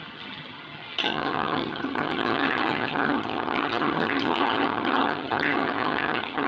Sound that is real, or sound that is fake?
fake